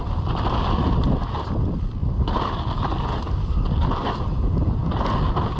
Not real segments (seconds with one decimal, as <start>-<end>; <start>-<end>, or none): none